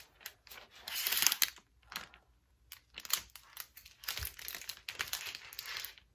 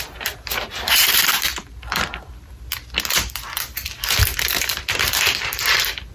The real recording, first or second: first